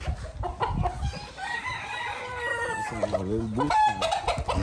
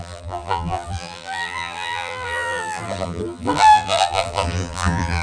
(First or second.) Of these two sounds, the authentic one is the first